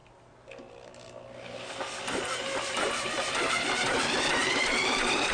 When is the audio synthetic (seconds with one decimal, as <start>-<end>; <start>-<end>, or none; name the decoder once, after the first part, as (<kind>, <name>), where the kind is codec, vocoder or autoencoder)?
4.4-5.3 (vocoder, BigVGAN v2)